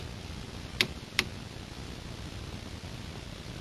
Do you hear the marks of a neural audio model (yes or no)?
no